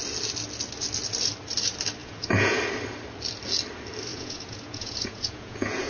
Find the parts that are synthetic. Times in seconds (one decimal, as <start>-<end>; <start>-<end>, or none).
2.0-2.6; 4.1-5.9